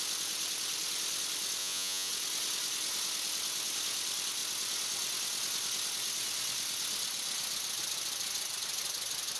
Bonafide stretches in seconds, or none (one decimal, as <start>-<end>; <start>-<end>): 0.0-1.6; 2.1-9.4

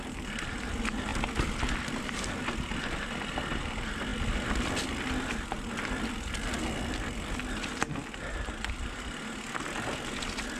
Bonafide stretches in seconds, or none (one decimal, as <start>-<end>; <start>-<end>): 0.0-10.6

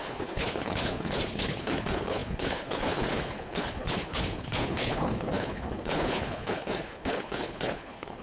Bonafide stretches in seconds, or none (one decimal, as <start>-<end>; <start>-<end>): none

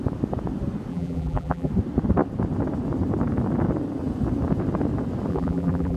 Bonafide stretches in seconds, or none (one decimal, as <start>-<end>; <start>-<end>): 0.0-0.9; 1.7-5.3

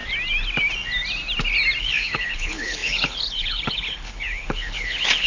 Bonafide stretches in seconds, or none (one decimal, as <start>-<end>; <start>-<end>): 0.0-1.8

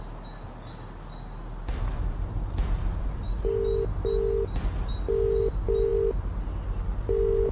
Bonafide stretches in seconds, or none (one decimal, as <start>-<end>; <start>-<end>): 0.0-7.5

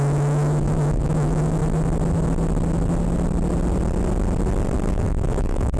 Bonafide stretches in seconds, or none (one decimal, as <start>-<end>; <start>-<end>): 1.6-4.9

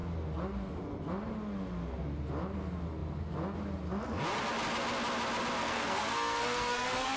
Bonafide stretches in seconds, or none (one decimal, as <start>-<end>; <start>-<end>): 0.0-5.6